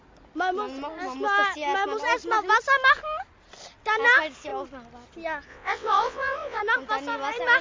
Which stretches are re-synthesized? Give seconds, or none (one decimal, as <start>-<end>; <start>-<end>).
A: 5.5-6.6